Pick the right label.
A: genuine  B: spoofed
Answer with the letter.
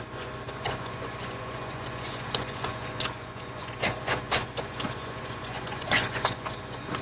B